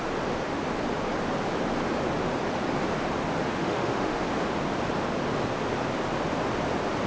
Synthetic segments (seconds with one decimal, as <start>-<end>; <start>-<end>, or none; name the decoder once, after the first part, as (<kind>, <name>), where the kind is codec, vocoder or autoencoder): 3.6-4.2 (autoencoder, DAC-VAE)